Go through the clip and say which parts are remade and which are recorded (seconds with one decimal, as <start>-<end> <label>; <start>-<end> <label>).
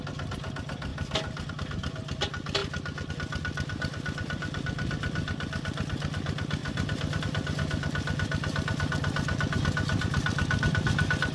0.0-6.6 recorded; 6.6-7.2 remade; 7.2-11.3 recorded